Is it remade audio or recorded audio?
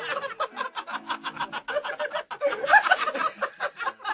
recorded